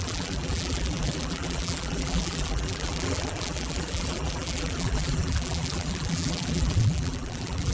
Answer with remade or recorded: remade